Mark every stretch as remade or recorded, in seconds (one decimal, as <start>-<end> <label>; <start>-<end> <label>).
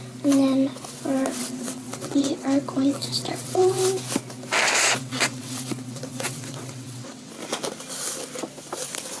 0.0-1.4 recorded; 1.4-3.8 remade; 3.8-5.0 recorded; 5.0-7.3 remade; 7.3-9.2 recorded